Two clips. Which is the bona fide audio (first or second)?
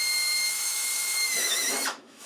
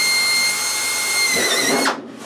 second